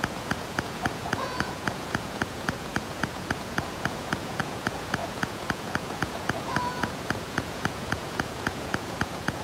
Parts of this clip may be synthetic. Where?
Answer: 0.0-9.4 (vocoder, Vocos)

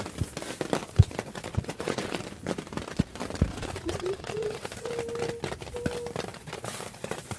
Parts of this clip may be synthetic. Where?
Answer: 0.8-2.2 (vocoder, Vocos); 3.5-4.9; 6.3-7.4